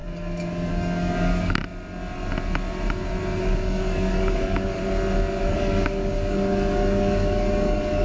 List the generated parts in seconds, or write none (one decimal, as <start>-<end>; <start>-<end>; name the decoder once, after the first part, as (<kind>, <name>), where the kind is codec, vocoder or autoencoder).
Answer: 0.0-1.6 (codec, DAC); 3.4-4.8; 5.4-8.0

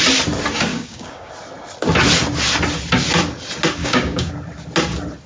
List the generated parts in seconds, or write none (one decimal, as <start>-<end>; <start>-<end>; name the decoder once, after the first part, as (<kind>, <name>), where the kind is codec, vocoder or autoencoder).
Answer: 0.7-1.3 (codec, DAC); 3.8-4.3

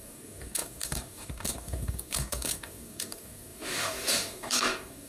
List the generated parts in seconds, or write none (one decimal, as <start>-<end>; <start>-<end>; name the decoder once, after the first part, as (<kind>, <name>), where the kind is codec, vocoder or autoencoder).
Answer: 0.0-5.1 (codec, DAC)